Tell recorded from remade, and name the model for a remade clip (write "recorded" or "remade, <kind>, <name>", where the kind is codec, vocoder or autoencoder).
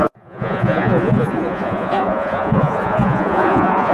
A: remade, vocoder, Vocos